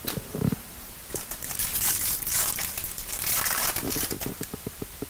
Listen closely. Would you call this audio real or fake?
fake